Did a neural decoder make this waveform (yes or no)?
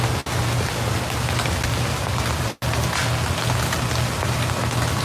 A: no